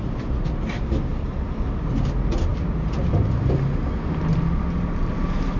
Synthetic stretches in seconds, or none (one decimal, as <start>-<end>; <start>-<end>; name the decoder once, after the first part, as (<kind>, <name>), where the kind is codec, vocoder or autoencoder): none